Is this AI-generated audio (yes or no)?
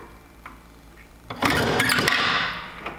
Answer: yes